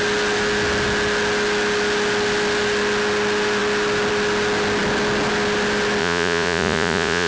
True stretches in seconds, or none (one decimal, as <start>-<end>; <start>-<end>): 0.0-6.0